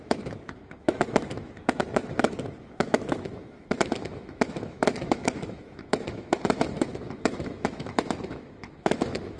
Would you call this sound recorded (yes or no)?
no